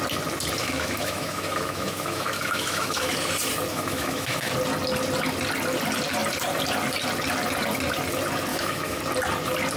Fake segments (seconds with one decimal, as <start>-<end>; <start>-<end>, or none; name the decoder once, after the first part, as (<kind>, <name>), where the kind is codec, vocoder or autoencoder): 0.6-3.1 (autoencoder, DAC-VAE); 3.7-4.5; 8.5-9.0